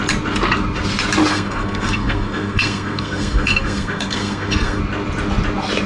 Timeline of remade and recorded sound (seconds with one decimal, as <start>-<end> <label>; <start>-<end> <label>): 0.0-1.3 recorded; 1.3-4.8 remade; 4.8-5.9 recorded